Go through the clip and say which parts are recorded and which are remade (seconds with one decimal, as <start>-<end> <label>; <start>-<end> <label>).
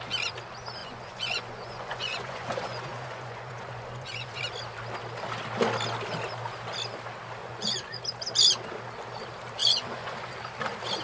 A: 0.0-0.8 recorded; 0.8-4.4 remade; 4.4-7.4 recorded; 7.4-8.0 remade; 8.0-9.6 recorded; 9.6-10.3 remade; 10.3-11.0 recorded